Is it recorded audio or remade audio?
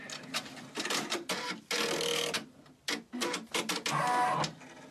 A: recorded